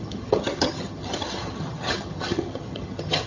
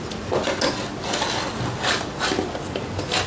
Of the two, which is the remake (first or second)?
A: first